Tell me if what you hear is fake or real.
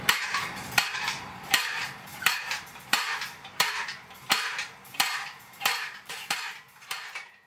fake